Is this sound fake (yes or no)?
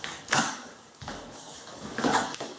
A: yes